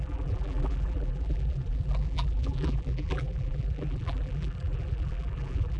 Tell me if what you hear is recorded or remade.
remade